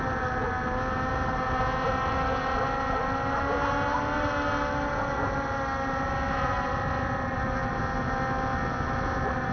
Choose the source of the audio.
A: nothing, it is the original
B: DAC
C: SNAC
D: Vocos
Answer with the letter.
A